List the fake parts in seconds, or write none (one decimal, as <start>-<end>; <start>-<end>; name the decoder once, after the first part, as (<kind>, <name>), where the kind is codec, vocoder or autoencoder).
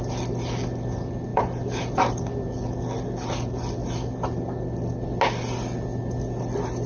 1.3-2.2 (vocoder, BigVGAN v2)